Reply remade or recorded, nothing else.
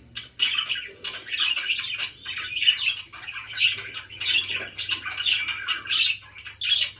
recorded